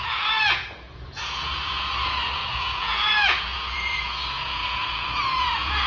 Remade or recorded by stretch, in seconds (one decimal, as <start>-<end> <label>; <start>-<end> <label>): 0.0-5.9 remade